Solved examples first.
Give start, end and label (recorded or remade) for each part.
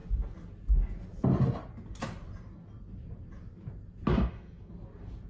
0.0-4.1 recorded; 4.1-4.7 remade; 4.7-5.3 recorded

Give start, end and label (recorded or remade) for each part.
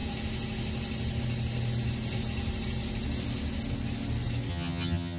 0.0-4.5 recorded; 4.5-5.2 remade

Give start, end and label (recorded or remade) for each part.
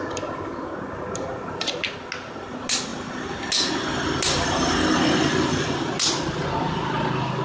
0.0-7.4 recorded